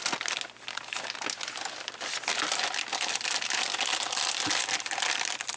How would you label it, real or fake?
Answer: real